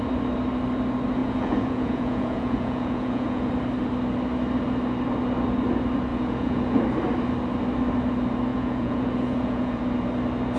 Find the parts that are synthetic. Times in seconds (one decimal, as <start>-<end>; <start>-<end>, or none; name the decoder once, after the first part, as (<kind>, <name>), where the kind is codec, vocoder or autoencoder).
1.2-3.5 (vocoder, Vocos); 6.1-6.8; 8.5-9.8